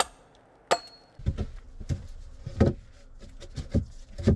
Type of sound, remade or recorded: recorded